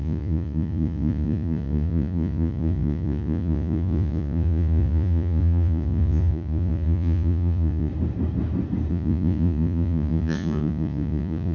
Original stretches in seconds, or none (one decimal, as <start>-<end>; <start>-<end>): 7.9-8.9

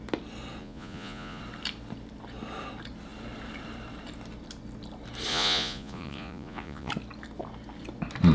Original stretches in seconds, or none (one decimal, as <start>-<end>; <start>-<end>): 0.0-0.6; 1.4-5.3; 6.9-8.3

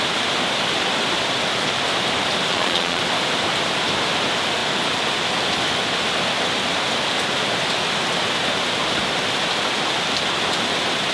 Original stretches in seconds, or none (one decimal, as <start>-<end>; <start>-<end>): 0.0-2.5; 3.0-11.1

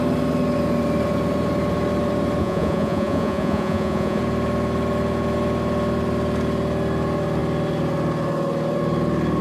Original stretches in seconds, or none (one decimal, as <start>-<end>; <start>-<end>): 0.0-2.4; 4.2-9.4

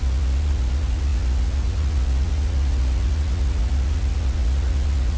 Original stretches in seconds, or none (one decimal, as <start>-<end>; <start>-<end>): none

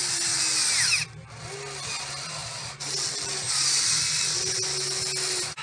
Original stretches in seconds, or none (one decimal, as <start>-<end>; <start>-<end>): 0.0-5.6